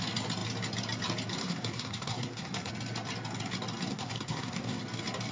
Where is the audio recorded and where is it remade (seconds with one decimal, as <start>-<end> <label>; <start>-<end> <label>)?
0.0-1.4 recorded; 1.4-2.7 remade; 2.7-3.9 recorded; 3.9-4.8 remade; 4.8-5.3 recorded